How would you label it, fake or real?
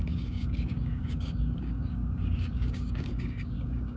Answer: fake